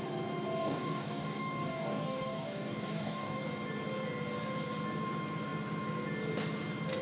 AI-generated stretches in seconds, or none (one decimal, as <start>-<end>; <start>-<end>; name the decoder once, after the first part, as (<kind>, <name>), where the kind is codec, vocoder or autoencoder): 0.6-3.4 (codec, DAC)